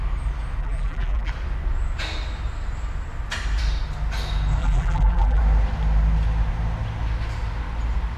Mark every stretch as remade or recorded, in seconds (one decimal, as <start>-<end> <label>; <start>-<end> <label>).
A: 0.0-0.6 recorded; 0.6-1.3 remade; 1.3-4.6 recorded; 4.6-5.4 remade; 5.4-8.2 recorded